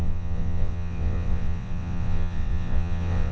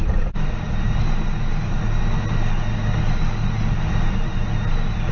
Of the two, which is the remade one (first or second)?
first